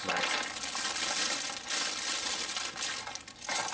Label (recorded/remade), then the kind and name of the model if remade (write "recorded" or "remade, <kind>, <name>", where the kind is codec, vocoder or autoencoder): recorded